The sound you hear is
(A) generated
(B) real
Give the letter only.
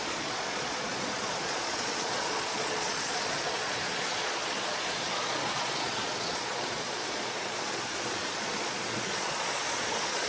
A